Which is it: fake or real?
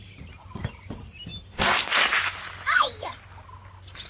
real